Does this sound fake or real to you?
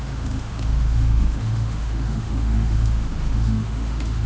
fake